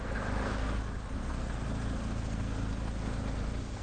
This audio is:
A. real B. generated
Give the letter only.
B